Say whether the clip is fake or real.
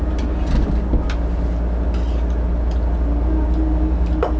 real